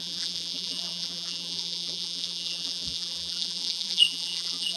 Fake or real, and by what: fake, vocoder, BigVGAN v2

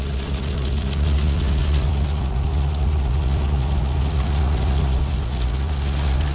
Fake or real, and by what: fake, vocoder, Vocos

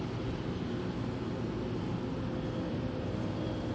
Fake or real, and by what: real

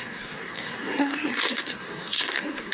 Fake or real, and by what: fake, codec, SNAC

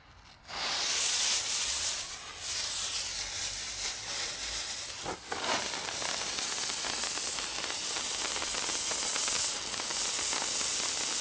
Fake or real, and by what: real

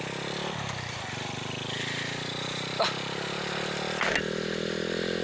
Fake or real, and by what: real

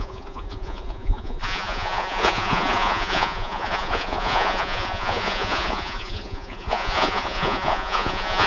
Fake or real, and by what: fake, vocoder, Vocos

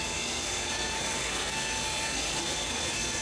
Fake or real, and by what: fake, codec, SNAC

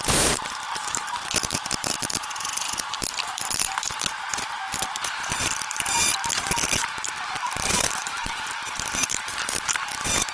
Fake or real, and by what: fake, vocoder, BigVGAN v2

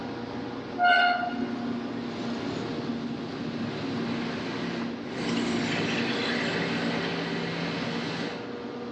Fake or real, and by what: real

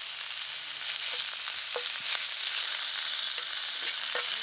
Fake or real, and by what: real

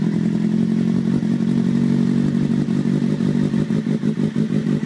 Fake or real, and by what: real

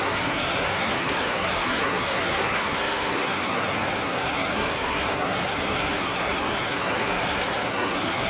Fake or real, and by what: fake, codec, SNAC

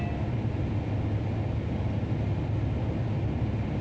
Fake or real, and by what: real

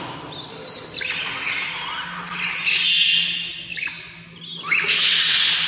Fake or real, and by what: real